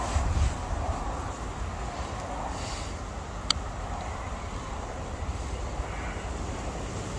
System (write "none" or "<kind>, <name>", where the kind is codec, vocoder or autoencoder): none